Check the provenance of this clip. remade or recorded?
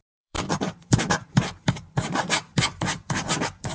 remade